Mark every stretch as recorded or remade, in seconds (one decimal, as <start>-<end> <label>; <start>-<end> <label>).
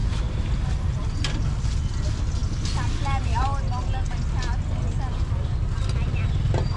0.0-0.5 remade; 0.5-6.8 recorded